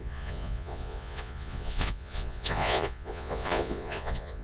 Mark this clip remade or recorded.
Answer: remade